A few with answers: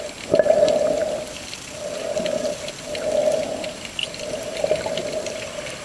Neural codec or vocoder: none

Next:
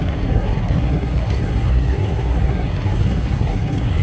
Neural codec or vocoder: codec, SNAC